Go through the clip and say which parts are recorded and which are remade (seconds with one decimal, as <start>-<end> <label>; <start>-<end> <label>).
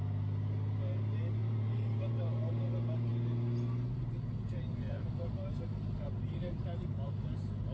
0.0-1.4 recorded; 1.4-2.5 remade; 2.5-5.0 recorded; 5.0-7.1 remade; 7.1-7.7 recorded